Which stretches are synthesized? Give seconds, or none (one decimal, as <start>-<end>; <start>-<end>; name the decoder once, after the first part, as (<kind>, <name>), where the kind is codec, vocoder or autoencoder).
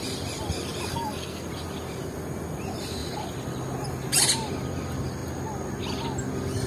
0.9-1.5 (codec, SNAC)